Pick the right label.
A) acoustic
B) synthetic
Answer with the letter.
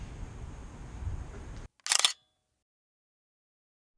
A